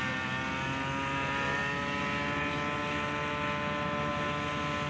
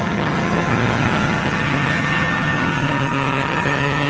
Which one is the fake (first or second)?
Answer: second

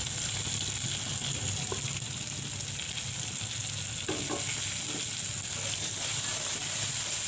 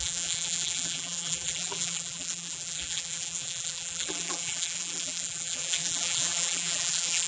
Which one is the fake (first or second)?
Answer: second